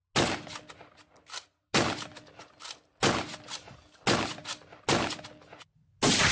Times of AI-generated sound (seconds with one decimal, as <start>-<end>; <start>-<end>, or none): none